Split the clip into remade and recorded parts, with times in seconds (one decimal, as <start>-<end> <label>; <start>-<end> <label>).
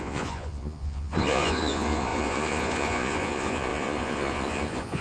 0.0-5.0 remade